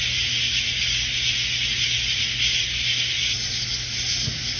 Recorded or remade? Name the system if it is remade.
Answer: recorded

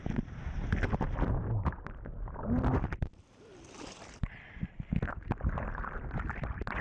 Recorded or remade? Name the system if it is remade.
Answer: recorded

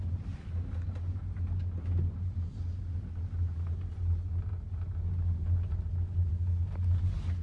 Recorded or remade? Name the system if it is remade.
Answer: recorded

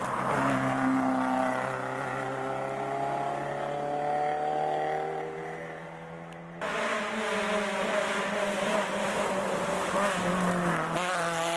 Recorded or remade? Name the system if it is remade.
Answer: recorded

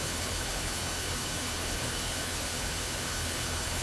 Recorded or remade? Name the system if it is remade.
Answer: remade, codec, HILCodec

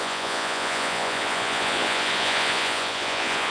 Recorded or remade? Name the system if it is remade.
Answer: remade, vocoder, Vocos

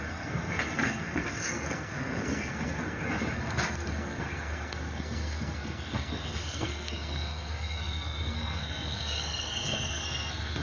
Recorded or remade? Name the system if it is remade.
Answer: remade, codec, SNAC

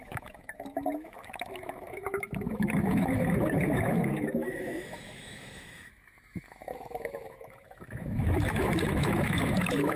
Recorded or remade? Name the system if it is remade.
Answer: remade, autoencoder, DAC-VAE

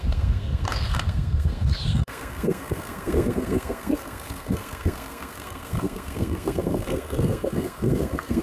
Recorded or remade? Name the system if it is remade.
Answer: remade, codec, SNAC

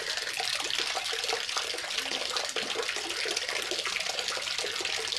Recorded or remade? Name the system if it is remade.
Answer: recorded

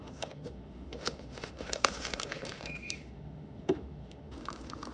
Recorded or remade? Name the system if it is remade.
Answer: remade, autoencoder, DAC-VAE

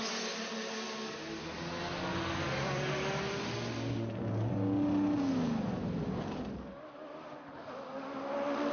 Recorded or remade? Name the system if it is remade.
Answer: recorded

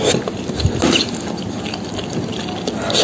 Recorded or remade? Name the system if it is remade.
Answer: recorded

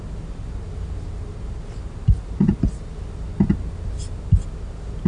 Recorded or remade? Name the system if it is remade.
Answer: recorded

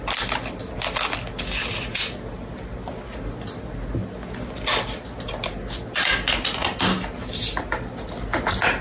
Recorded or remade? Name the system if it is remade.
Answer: recorded